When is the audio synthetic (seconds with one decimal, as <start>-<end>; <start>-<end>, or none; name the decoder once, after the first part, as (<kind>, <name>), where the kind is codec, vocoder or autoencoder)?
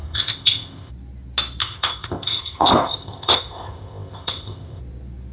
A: 0.0-0.9 (codec, ZipCodec); 1.6-4.8